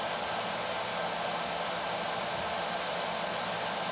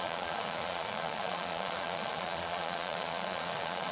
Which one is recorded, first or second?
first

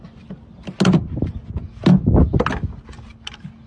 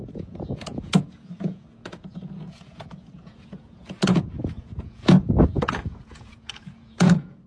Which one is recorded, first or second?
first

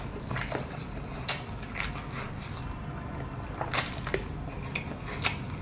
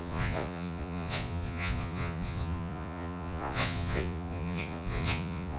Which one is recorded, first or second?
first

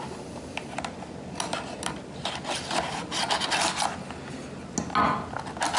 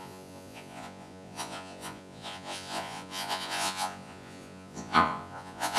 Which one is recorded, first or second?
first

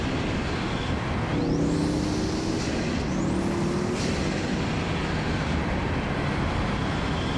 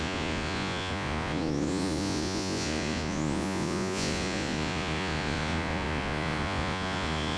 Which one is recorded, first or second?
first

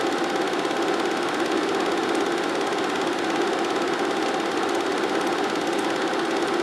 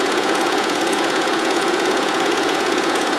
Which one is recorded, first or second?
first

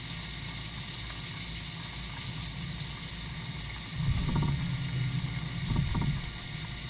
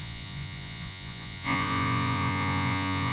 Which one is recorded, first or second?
first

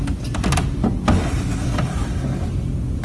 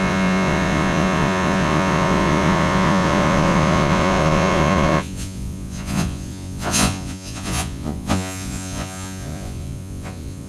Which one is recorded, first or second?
first